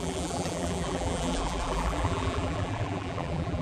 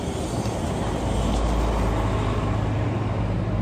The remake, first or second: first